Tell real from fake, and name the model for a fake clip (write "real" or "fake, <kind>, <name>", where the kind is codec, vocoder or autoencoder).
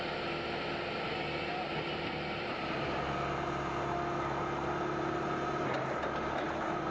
real